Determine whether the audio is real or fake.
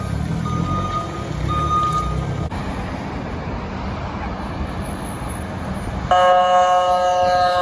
real